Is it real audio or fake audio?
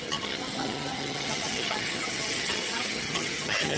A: fake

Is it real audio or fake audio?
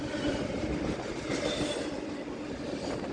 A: real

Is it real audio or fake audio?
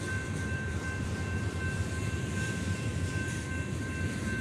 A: fake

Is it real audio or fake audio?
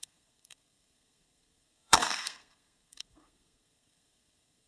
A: fake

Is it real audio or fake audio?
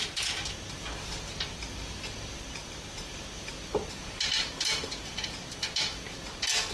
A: real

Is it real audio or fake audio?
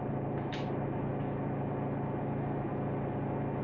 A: real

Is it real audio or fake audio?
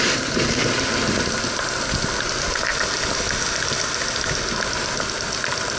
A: real